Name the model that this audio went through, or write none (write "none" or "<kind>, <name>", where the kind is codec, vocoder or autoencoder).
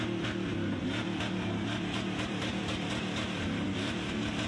vocoder, BigVGAN v2